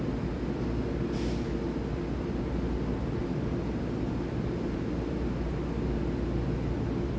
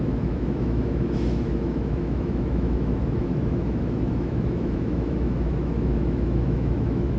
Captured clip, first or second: first